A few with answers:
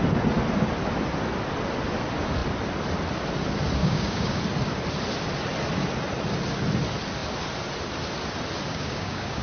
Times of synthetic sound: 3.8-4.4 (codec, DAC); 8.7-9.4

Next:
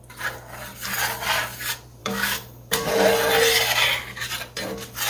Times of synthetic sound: 2.0-2.9 (codec, DAC)

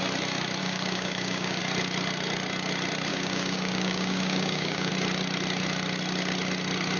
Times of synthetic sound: 0.6-1.6 (codec, DAC); 3.1-4.9

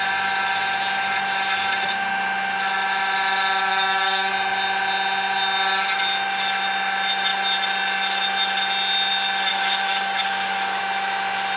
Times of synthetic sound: 3.7-4.3 (codec, DAC); 9.5-10.8

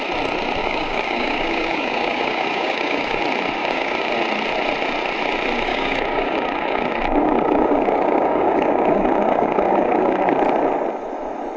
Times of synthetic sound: 0.6-3.2 (codec, DAC); 3.6-4.1; 5.7-10.3

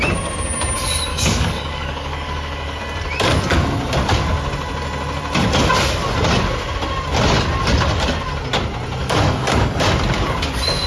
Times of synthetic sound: 1.1-2.8 (codec, DAC); 9.0-9.8

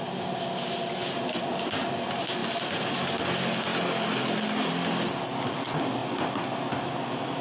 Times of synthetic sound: none

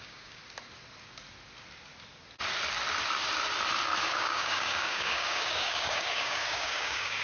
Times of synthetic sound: 0.0-0.4 (codec, DAC); 4.0-7.2